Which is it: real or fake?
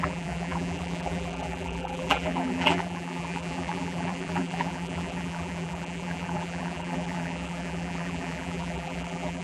fake